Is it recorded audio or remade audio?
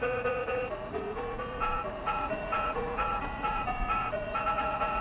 remade